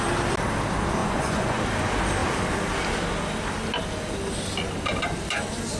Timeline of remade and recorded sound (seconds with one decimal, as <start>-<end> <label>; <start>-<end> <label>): 0.0-1.0 recorded; 1.0-1.6 remade; 1.6-5.8 recorded